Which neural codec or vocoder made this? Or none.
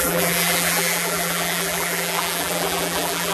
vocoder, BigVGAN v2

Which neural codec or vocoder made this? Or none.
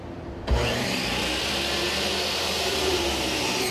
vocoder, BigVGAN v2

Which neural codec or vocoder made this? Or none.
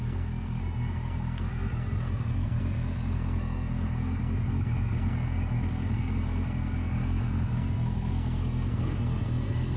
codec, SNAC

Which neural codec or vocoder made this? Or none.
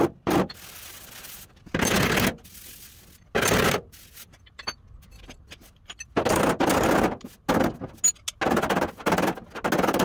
none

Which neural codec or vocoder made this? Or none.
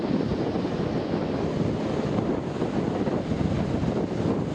none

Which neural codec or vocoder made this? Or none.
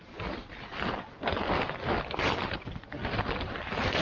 none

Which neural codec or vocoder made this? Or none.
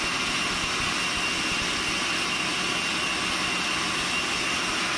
none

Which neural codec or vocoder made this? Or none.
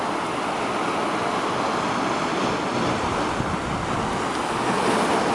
none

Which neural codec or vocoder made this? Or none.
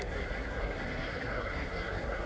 codec, SNAC